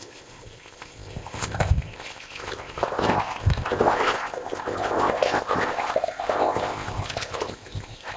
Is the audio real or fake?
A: fake